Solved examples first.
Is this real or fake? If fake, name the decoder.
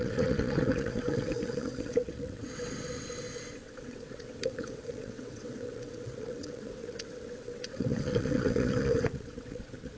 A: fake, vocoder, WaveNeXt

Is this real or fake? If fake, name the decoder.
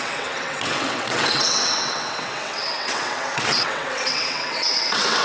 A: fake, vocoder, WaveNeXt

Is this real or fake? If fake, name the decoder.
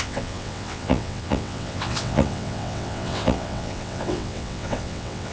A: fake, vocoder, WaveNeXt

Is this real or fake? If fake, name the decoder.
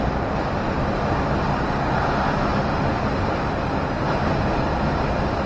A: real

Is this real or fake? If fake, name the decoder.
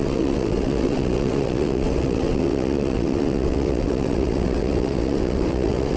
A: fake, vocoder, WaveNeXt